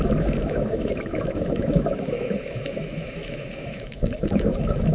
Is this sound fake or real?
fake